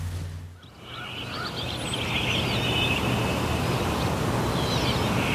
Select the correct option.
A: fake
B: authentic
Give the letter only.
B